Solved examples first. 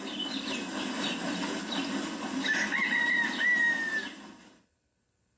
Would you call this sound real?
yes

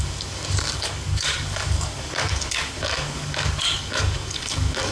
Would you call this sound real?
no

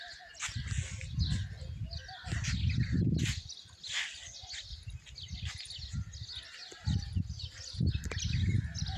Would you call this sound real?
yes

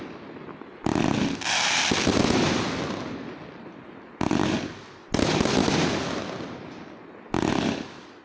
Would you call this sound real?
yes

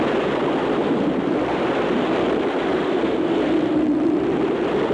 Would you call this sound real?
yes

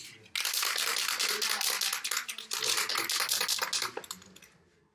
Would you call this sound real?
yes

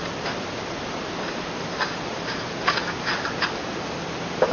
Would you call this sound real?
yes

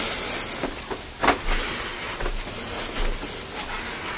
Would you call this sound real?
yes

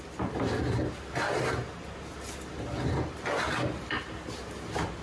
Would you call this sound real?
yes